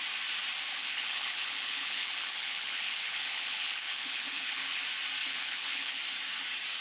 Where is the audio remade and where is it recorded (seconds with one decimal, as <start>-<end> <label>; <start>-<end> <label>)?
0.0-0.7 recorded; 0.7-4.8 remade; 4.8-5.2 recorded; 5.2-6.0 remade; 6.0-6.8 recorded